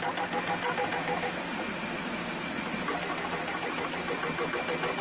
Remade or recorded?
recorded